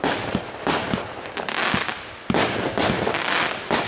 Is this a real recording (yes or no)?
yes